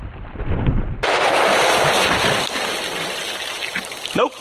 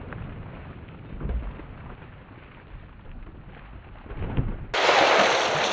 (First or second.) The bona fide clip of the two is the second